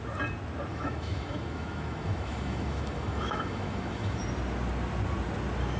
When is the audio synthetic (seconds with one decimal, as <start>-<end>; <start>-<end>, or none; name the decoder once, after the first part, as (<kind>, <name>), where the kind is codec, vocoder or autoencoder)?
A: 0.7-4.2 (autoencoder, DAC-VAE)